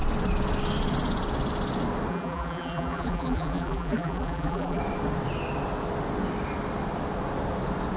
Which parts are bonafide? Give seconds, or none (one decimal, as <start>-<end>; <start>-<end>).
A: 0.0-2.1; 4.8-8.0